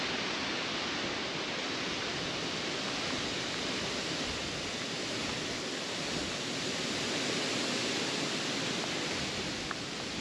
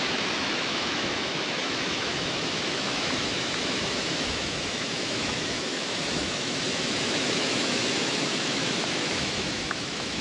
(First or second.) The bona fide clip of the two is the first